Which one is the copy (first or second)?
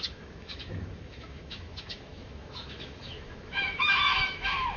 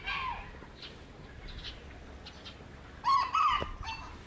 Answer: first